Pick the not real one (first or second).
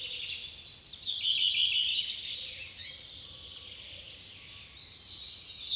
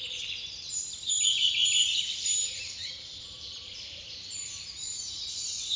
second